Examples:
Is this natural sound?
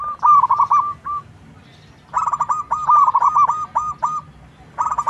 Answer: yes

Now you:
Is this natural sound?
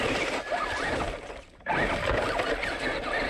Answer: yes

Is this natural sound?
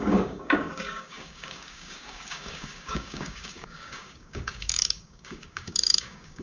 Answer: no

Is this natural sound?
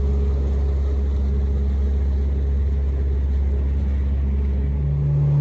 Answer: yes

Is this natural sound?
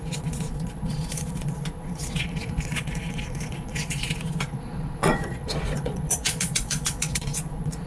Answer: no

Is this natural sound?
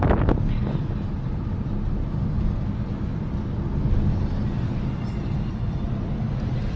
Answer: yes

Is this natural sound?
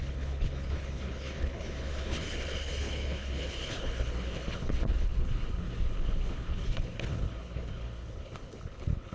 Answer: no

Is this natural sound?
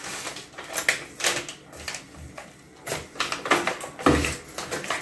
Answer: yes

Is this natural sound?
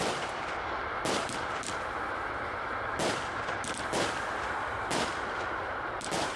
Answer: no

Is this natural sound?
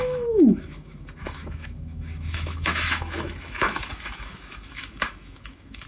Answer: no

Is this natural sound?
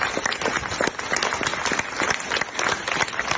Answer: yes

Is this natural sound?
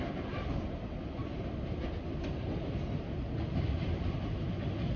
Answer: yes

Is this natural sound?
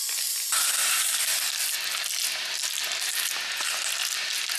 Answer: yes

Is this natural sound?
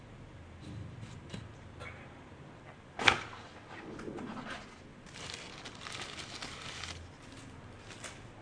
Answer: yes